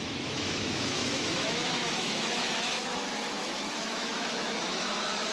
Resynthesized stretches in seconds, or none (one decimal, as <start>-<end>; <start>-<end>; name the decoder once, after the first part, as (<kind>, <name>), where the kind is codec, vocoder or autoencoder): 0.0-5.3 (autoencoder, DAC-VAE)